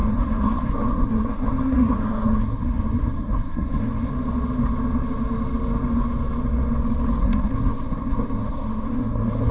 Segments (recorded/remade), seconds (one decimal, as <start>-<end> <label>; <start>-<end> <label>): 0.0-4.1 remade; 4.1-7.2 recorded; 7.2-9.5 remade

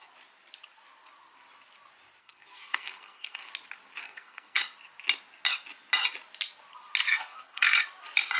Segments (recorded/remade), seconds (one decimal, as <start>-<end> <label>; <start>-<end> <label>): 0.0-2.2 recorded; 2.2-3.5 remade; 3.5-4.0 recorded; 4.0-4.6 remade; 4.6-7.1 recorded; 7.1-7.8 remade; 7.8-8.4 recorded

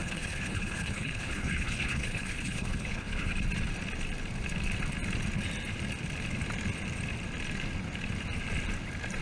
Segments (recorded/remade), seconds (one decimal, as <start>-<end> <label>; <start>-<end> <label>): 0.0-3.3 remade; 3.3-9.2 recorded

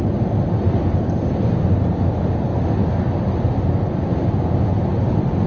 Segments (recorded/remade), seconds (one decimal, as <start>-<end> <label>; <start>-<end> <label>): 0.0-5.5 recorded

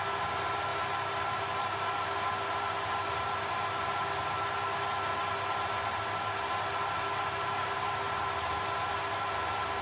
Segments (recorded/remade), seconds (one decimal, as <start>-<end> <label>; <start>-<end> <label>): 0.0-9.8 recorded

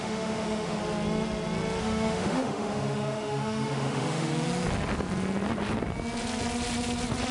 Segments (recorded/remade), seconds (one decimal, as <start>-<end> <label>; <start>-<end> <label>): 0.0-0.8 remade; 0.8-1.8 recorded; 1.8-4.3 remade; 4.3-7.3 recorded

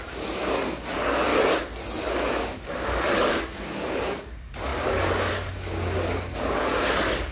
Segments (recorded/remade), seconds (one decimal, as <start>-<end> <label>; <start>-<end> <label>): 0.0-1.3 remade; 1.3-2.1 recorded; 2.1-7.3 remade